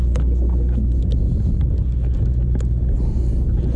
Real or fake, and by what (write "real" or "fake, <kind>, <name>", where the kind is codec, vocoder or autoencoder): real